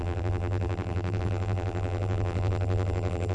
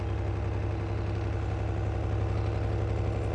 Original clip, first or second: second